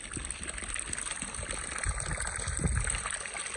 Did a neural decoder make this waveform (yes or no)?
no